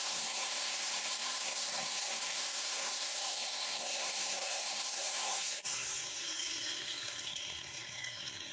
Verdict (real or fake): fake